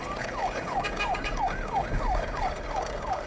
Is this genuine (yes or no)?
no